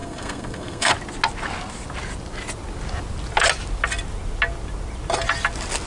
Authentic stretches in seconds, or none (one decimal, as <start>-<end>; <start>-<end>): 0.9-5.9